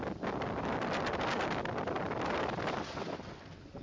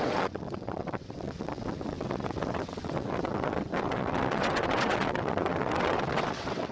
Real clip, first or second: first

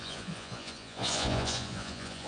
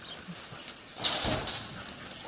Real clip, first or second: second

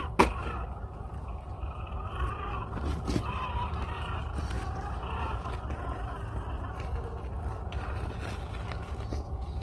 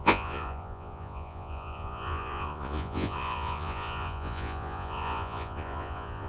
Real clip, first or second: first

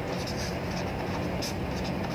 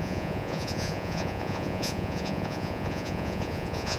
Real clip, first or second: first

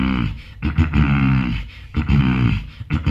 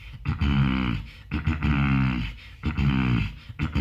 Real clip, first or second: second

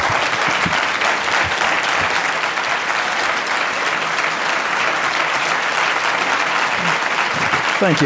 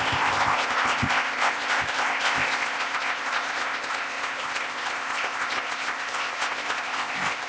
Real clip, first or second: first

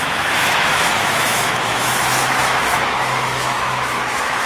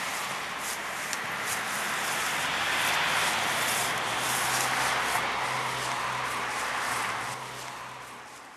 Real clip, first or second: second